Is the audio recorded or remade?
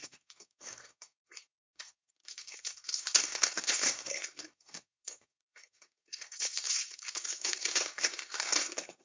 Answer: remade